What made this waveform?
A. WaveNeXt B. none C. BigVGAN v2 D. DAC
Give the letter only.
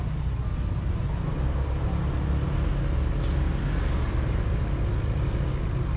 B